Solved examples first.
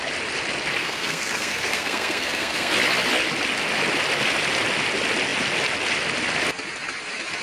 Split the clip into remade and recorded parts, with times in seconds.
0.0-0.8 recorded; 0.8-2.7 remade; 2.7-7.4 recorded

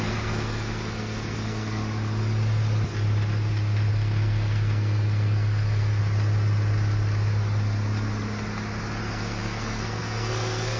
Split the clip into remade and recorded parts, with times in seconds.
0.0-1.8 remade; 1.8-3.9 recorded; 3.9-6.0 remade; 6.0-9.0 recorded; 9.0-10.8 remade